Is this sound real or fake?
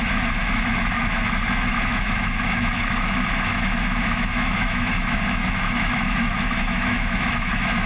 fake